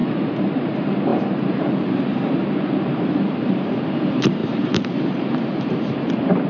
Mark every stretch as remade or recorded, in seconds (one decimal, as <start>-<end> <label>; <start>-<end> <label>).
0.0-0.6 recorded; 0.6-6.5 remade

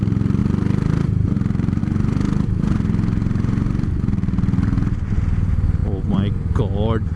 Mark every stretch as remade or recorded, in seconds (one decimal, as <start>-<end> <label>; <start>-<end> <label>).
0.0-5.8 recorded; 5.8-7.2 remade

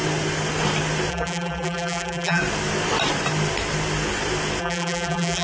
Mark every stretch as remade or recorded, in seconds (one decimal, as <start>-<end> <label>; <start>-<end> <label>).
0.0-1.1 recorded; 1.1-2.4 remade; 2.4-4.6 recorded; 4.6-5.4 remade

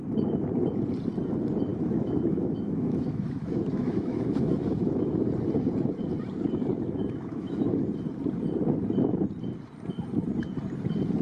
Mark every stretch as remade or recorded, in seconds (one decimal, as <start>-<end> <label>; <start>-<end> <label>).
0.0-1.7 recorded; 1.7-5.2 remade; 5.2-7.0 recorded; 7.0-7.8 remade; 7.8-11.2 recorded